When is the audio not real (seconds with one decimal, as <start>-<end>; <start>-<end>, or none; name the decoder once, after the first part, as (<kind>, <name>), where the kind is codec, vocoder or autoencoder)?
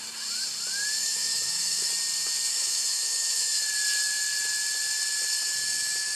1.0-1.9 (autoencoder, DAC-VAE); 2.5-3.6